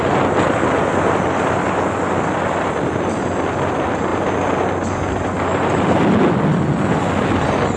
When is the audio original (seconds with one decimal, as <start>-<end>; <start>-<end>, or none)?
0.0-7.8